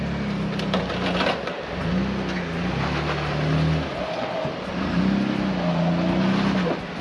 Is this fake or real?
real